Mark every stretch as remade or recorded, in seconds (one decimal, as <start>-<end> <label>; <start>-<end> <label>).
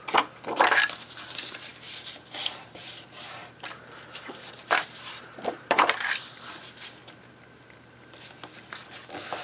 0.0-1.7 recorded; 1.7-6.6 remade; 6.6-9.4 recorded